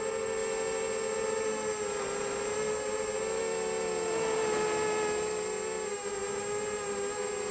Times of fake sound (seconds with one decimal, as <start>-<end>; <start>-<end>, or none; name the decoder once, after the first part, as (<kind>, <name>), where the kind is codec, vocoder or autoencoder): none